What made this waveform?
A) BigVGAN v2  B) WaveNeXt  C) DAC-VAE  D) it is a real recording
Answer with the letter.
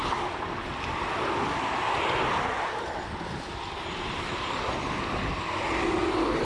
A